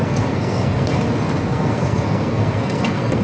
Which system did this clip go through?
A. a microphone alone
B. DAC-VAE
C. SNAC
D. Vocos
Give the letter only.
C